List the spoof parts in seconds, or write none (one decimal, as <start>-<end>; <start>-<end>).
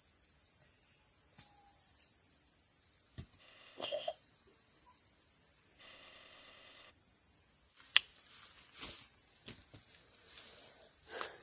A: 3.4-4.1; 5.8-6.9